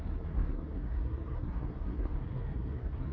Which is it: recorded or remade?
remade